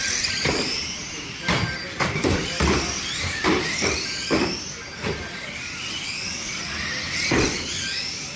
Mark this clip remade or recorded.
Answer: recorded